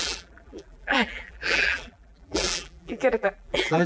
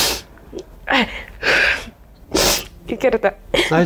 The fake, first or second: first